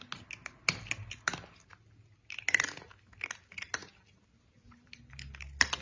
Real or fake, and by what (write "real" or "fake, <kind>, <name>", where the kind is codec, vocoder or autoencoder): real